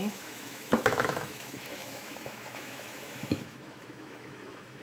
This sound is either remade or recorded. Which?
remade